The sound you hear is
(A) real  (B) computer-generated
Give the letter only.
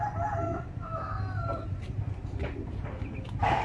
A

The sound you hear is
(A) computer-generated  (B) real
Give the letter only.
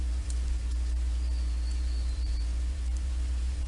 A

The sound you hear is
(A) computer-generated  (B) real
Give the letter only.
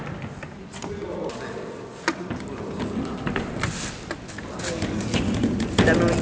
B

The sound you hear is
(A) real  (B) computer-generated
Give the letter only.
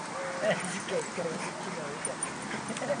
A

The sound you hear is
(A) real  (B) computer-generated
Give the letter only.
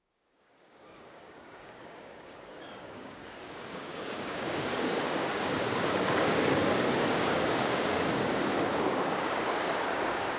B